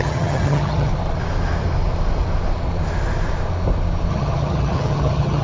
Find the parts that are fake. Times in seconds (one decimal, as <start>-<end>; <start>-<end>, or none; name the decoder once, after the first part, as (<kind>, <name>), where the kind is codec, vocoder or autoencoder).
0.0-0.9 (vocoder, HiFi-GAN); 4.1-5.4